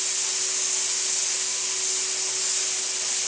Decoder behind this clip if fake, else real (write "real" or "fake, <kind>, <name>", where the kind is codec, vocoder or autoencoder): real